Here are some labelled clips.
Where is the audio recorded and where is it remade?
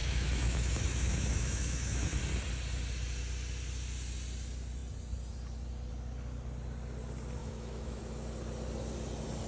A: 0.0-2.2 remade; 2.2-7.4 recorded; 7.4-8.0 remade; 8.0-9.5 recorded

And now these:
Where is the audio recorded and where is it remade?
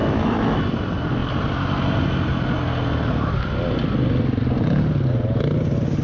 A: 0.0-0.6 remade; 0.6-6.0 recorded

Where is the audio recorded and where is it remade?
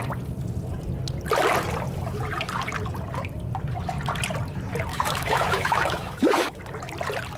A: 0.0-4.9 recorded; 4.9-6.6 remade; 6.6-7.4 recorded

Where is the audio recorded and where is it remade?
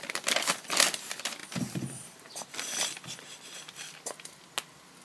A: 0.0-5.0 recorded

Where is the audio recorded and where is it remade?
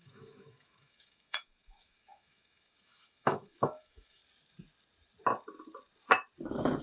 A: 0.0-4.2 remade; 4.2-6.8 recorded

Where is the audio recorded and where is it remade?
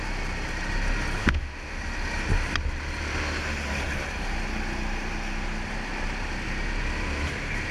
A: 0.0-1.2 recorded; 1.2-1.8 remade; 1.8-7.7 recorded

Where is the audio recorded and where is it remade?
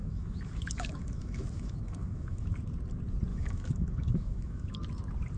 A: 0.0-2.5 remade; 2.5-3.3 recorded; 3.3-4.7 remade; 4.7-5.4 recorded